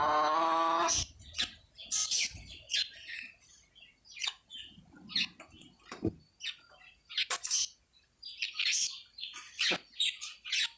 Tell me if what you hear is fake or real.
real